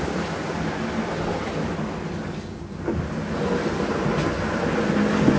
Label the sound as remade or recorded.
recorded